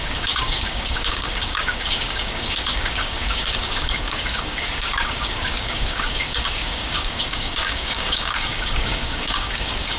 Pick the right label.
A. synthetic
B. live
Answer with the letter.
A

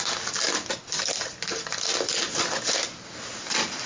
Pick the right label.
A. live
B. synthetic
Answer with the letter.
A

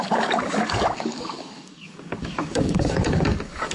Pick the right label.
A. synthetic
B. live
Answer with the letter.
A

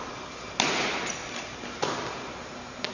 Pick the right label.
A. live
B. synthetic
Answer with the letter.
A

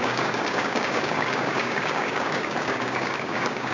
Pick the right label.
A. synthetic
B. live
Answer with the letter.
A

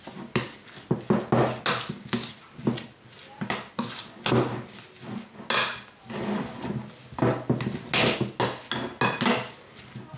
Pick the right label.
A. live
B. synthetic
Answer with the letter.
A